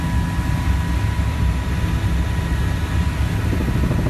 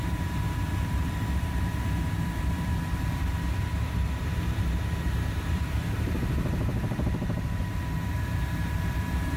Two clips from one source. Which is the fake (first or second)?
second